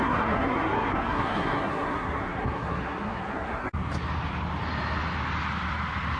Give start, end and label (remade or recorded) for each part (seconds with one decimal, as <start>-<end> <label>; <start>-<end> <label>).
0.0-3.7 remade; 3.7-6.2 recorded